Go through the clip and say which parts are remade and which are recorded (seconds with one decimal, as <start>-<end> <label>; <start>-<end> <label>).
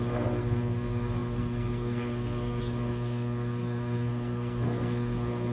0.0-5.5 remade